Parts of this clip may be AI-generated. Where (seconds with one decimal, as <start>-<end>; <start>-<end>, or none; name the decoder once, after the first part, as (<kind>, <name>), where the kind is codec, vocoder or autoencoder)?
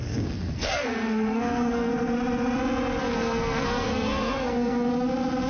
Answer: 0.0-1.9 (codec, SNAC); 3.0-4.9